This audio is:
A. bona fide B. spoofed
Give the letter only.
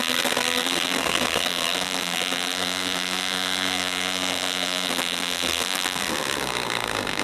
B